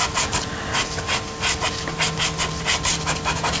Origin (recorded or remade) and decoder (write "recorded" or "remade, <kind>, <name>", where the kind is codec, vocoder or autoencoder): recorded